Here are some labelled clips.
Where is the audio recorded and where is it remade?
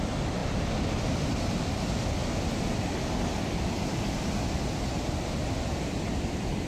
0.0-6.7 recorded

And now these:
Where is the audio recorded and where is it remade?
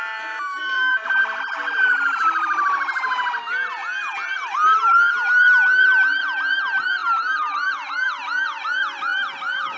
0.0-1.2 remade; 1.2-4.1 recorded; 4.1-9.1 remade; 9.1-9.8 recorded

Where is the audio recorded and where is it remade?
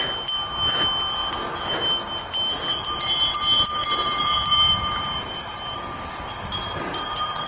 0.0-2.7 recorded; 2.7-7.5 remade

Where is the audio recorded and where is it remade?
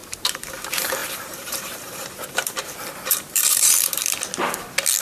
0.0-0.5 remade; 0.5-1.0 recorded; 1.0-4.0 remade; 4.0-5.0 recorded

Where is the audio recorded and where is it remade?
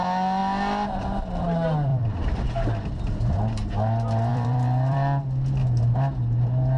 0.0-1.9 recorded; 1.9-2.5 remade; 2.5-4.3 recorded; 4.3-5.2 remade; 5.2-6.8 recorded